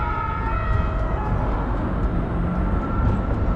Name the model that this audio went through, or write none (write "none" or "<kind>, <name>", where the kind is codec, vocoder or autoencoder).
none